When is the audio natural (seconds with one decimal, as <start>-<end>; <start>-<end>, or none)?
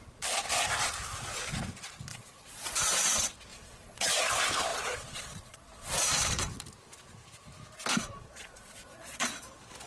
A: 0.0-2.1; 3.0-3.5; 4.2-4.7; 6.2-8.2; 9.3-9.9